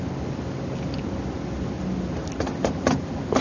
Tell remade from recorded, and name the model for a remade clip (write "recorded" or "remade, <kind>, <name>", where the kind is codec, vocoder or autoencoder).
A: recorded